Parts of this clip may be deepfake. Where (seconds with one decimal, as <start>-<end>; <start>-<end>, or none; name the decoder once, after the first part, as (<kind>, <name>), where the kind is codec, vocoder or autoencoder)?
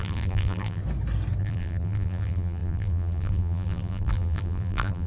0.0-0.8 (vocoder, BigVGAN v2); 1.4-5.1